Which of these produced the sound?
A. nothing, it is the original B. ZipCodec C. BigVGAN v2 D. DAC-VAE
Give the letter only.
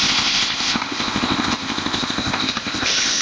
B